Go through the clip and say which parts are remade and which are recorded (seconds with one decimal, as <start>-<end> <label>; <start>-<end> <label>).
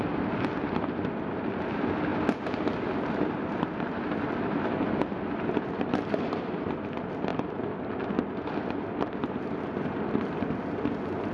0.0-11.3 recorded